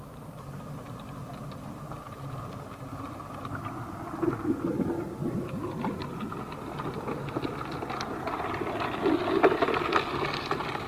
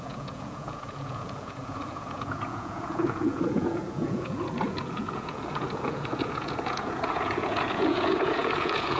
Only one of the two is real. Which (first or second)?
first